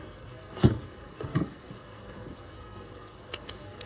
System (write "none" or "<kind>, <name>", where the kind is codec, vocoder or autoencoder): codec, SNAC